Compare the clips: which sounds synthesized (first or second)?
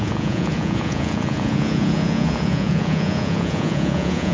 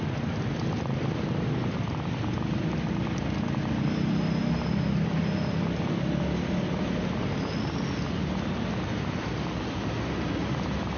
first